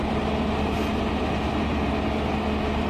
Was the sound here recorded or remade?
recorded